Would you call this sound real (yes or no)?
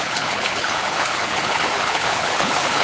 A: no